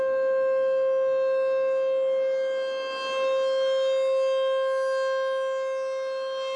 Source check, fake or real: real